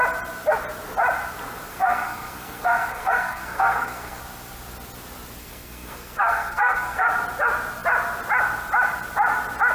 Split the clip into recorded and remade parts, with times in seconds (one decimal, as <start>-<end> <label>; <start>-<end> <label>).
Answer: 0.0-1.7 recorded; 1.7-4.2 remade; 4.2-5.4 recorded; 5.4-7.1 remade; 7.1-9.7 recorded